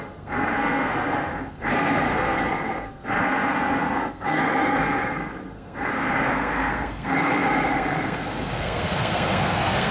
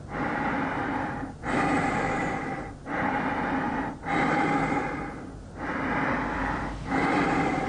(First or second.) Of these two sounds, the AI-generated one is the first